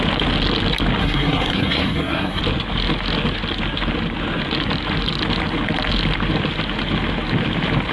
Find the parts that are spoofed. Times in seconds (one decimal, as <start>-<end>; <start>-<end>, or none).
1.0-2.4